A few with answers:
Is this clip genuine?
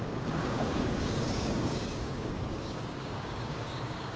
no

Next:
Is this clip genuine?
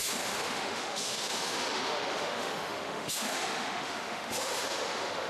no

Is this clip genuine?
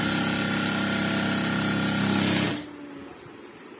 yes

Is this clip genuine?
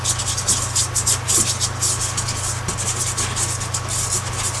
yes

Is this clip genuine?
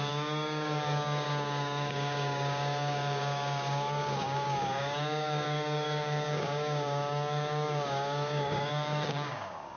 no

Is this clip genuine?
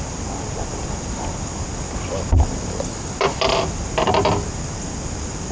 yes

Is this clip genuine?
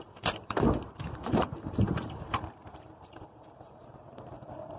no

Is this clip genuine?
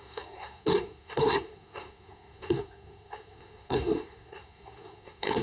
no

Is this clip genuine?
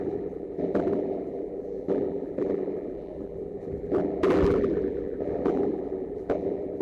no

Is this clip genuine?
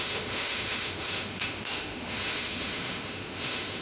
no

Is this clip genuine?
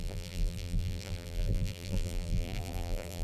no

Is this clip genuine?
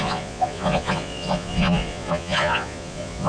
no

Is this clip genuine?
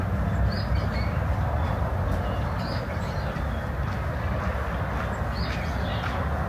yes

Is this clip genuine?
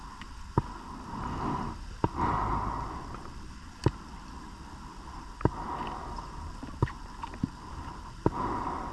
yes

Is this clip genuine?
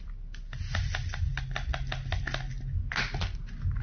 yes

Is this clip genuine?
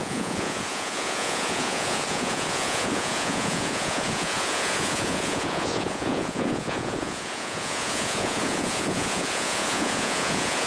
no